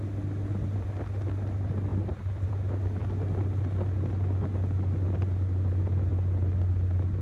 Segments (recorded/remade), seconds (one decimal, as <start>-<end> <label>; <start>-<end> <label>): 0.0-7.2 recorded